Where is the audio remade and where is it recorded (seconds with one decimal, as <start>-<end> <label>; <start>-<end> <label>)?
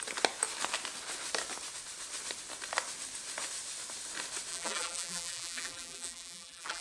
0.0-4.5 recorded; 4.5-6.8 remade